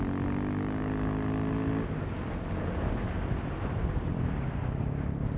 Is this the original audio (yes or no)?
yes